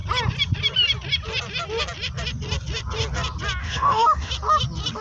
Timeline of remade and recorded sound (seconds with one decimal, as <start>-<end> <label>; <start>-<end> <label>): 0.0-3.6 recorded; 3.6-4.3 remade; 4.3-5.0 recorded